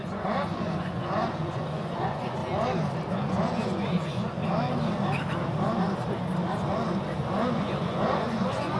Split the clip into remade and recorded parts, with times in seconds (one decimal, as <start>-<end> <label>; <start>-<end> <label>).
0.0-2.4 remade; 2.4-3.1 recorded; 3.1-4.4 remade; 4.4-7.5 recorded; 7.5-8.8 remade